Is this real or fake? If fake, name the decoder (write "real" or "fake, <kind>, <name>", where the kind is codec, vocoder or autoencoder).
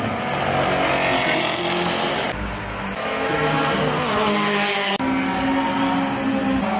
real